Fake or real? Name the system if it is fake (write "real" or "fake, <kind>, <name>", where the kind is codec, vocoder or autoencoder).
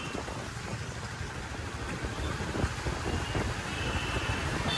real